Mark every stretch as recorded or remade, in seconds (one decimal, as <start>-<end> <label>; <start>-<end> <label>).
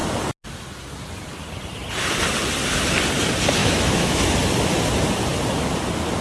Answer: 0.0-3.6 recorded; 3.6-4.2 remade; 4.2-6.2 recorded